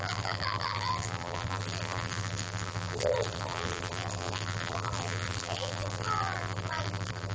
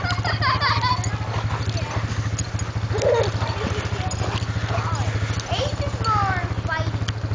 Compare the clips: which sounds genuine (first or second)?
second